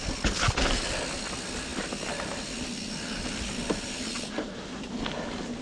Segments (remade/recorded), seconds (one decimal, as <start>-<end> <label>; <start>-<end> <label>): 0.0-5.6 recorded